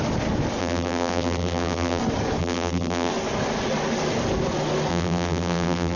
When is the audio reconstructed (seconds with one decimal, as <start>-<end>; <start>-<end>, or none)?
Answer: 0.6-2.0; 2.4-3.1; 4.9-6.0